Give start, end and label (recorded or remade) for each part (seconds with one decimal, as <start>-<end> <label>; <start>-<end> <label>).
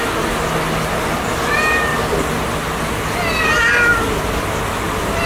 0.0-5.3 recorded